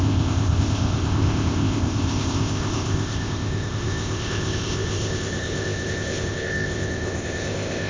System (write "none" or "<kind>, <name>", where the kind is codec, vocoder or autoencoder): codec, ZipCodec